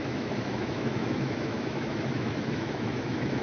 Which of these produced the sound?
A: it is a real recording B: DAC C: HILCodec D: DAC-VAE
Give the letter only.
D